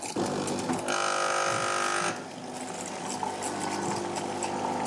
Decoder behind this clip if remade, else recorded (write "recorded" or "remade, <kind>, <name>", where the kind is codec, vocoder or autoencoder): recorded